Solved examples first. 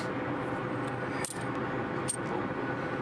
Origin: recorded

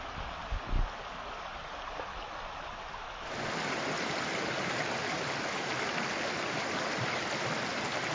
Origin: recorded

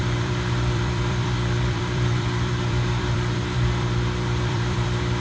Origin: remade